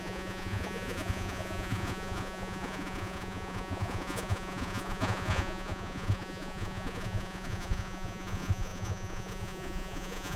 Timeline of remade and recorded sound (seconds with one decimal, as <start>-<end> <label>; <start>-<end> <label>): 0.0-10.4 remade